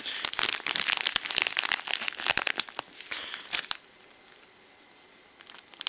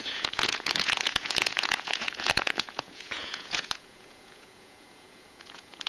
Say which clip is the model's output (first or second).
second